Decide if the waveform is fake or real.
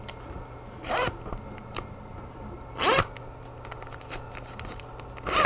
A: real